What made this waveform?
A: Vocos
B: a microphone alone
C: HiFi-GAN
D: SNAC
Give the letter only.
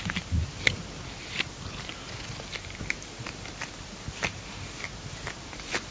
B